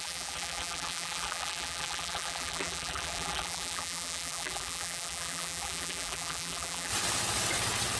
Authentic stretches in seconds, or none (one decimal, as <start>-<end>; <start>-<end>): 6.9-8.0